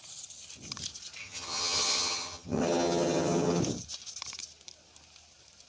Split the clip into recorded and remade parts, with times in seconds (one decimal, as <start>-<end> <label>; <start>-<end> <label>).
0.0-1.2 recorded; 1.2-3.6 remade; 3.6-5.7 recorded